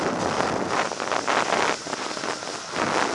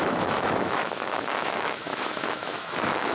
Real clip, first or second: first